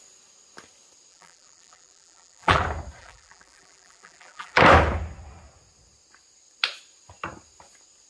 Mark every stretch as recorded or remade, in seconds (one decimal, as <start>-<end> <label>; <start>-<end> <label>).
0.0-1.1 recorded; 1.1-2.6 remade; 2.6-3.0 recorded; 3.0-4.6 remade; 4.6-8.1 recorded